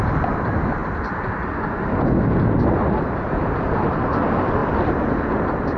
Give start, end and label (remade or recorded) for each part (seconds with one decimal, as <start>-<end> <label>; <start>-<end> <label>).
0.0-5.8 recorded